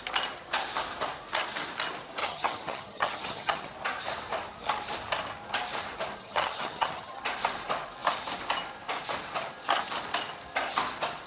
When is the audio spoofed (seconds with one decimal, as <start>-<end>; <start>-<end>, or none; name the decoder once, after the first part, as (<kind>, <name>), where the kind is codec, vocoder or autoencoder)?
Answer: 2.2-3.7 (vocoder, HiFi-GAN); 6.2-7.2